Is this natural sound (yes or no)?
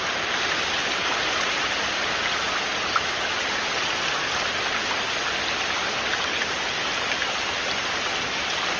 yes